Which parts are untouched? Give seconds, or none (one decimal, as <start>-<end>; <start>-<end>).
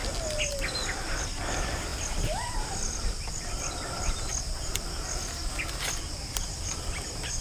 0.0-0.5; 4.3-5.8